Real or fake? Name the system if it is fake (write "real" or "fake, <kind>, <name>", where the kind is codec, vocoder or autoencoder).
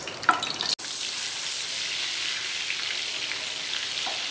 real